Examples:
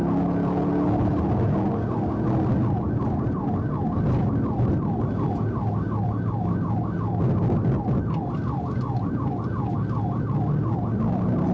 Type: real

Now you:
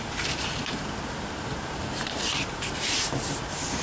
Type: fake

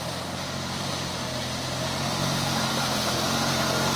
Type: real